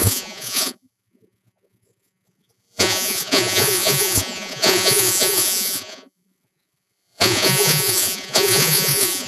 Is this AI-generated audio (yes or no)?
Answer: yes